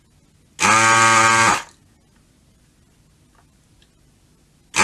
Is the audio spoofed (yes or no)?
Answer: no